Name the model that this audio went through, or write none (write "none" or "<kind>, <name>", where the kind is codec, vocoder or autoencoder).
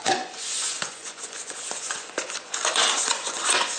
vocoder, Vocos